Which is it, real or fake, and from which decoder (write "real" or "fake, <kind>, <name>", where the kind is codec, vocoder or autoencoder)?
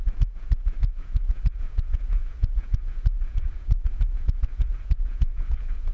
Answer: fake, vocoder, Vocos